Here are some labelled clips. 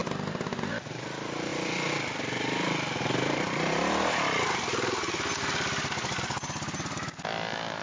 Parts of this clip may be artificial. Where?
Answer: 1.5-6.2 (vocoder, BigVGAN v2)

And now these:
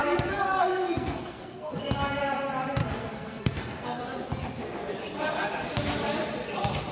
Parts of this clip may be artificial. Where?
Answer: 0.0-1.8 (codec, SNAC); 2.8-4.0

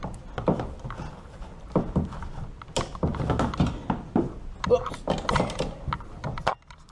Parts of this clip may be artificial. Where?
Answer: none

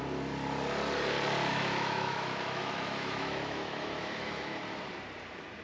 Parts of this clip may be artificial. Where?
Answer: 1.5-4.6 (autoencoder, DAC-VAE)

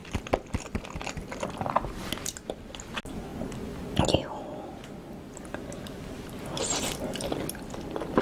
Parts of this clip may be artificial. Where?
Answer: none